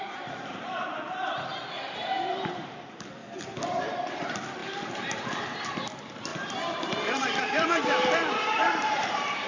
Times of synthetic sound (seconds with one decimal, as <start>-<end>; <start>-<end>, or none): 0.0-3.2; 3.8-9.5